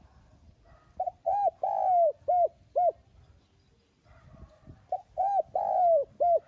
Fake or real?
real